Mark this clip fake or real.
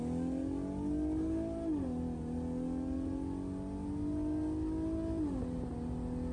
real